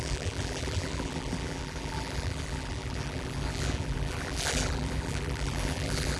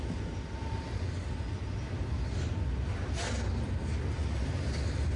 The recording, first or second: second